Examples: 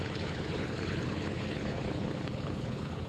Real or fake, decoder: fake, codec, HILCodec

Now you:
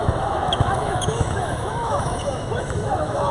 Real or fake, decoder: fake, autoencoder, DAC-VAE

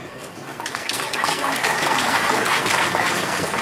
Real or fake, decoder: fake, codec, SNAC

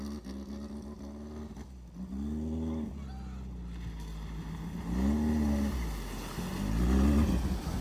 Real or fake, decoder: real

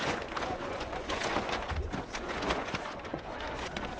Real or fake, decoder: fake, vocoder, Vocos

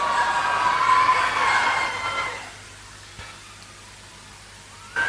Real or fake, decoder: real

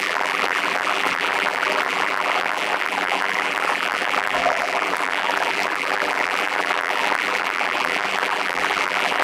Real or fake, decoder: fake, vocoder, BigVGAN v2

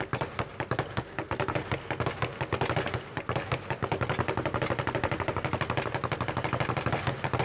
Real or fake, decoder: real